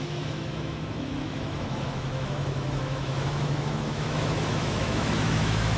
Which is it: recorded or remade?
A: remade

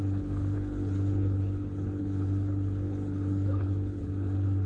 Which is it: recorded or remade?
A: remade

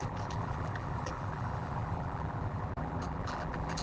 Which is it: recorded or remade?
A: remade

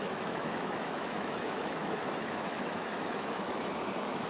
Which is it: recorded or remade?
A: remade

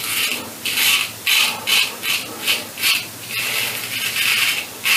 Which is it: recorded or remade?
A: recorded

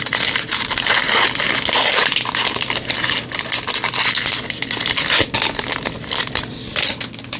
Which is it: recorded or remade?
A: recorded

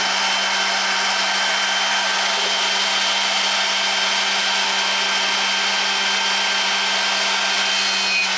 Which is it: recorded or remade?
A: recorded